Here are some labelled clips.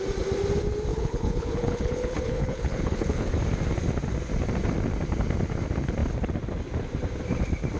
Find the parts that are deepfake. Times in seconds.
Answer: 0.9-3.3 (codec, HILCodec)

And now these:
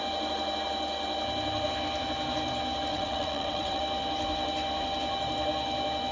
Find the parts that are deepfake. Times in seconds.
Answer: 2.9-3.8 (vocoder, WaveNeXt)

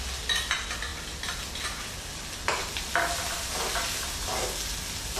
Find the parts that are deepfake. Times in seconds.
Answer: none